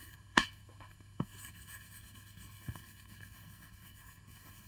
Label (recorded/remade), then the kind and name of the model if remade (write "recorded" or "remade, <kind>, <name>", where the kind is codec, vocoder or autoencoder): remade, codec, SNAC